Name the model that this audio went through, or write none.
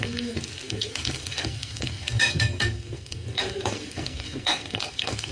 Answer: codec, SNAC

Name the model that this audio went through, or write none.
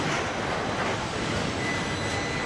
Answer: none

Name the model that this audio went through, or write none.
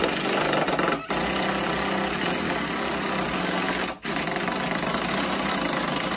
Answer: none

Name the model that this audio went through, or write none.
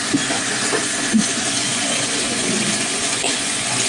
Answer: vocoder, Vocos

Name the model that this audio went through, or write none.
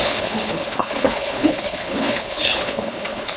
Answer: codec, HILCodec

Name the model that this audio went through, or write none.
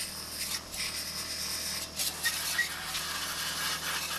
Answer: none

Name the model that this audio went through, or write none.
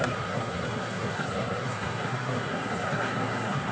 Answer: codec, SNAC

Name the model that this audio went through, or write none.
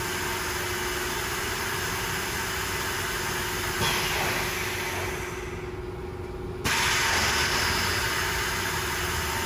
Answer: none